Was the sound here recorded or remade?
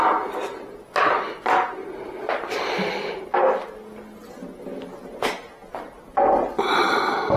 recorded